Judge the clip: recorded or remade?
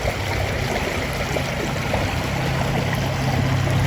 recorded